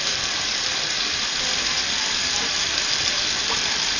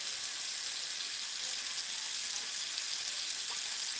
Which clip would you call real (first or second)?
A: second